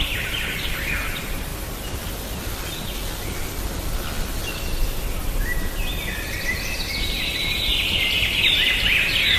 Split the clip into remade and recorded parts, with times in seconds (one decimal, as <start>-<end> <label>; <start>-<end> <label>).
0.0-1.5 remade; 1.5-6.4 recorded; 6.4-7.7 remade; 7.7-8.4 recorded; 8.4-9.4 remade